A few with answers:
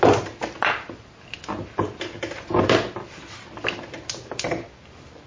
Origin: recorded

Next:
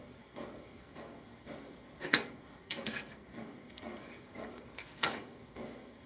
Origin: remade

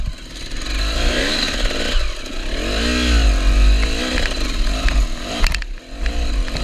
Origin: recorded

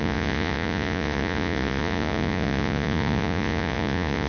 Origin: remade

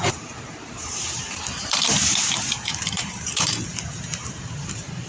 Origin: remade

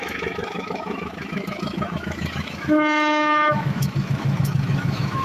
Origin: remade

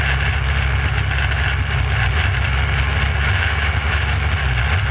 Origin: recorded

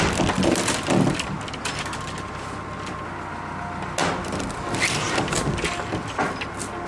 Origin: recorded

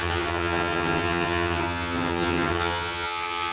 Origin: remade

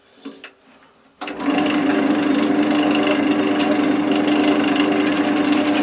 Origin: recorded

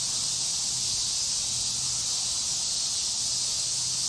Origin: recorded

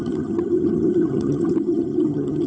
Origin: remade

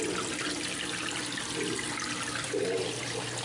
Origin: recorded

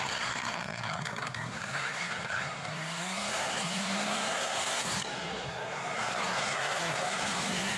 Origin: remade